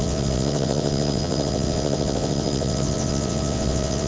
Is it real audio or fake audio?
fake